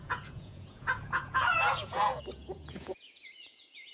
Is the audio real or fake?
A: fake